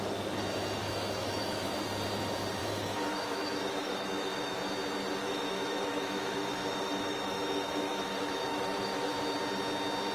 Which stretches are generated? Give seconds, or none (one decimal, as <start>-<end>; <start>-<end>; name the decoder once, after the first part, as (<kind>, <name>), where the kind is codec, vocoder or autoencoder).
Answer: 0.8-1.7 (autoencoder, DAC-VAE); 2.6-4.6; 5.2-9.1